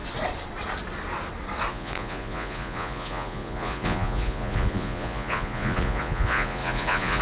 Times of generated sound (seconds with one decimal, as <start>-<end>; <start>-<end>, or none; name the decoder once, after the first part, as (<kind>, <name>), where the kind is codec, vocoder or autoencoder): 1.7-7.2 (vocoder, Vocos)